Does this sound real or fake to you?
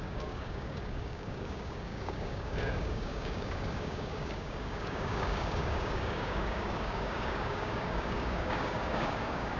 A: fake